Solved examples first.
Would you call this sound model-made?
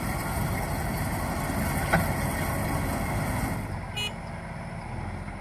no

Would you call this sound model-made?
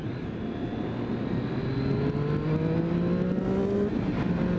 no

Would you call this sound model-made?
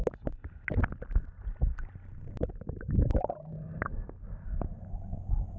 no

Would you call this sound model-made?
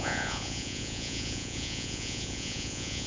yes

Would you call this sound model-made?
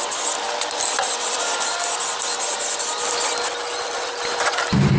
no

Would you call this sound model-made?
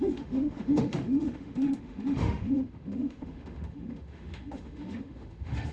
yes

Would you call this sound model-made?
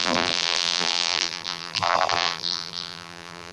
yes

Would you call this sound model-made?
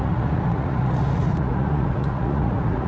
yes